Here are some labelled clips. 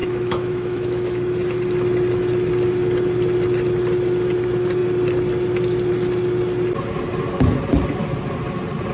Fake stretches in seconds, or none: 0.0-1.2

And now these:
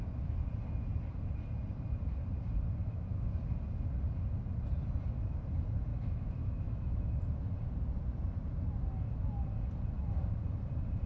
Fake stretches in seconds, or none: 2.8-3.4; 5.9-7.0

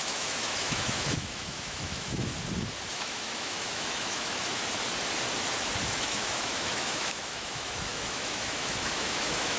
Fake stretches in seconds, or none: 0.0-2.3; 2.9-4.6; 5.8-9.6